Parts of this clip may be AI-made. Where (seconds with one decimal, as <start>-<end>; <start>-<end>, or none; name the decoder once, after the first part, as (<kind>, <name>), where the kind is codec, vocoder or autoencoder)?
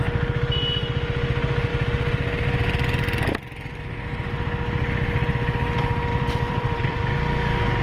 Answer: 6.1-7.0 (vocoder, BigVGAN v2)